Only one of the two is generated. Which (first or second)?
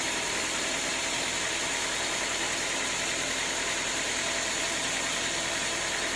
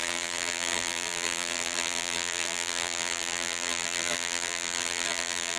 second